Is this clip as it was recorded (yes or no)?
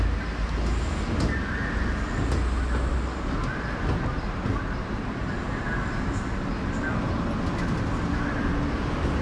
yes